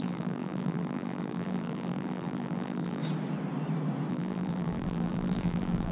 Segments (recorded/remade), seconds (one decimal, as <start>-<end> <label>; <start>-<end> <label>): 0.0-3.0 remade; 3.0-4.1 recorded; 4.1-5.9 remade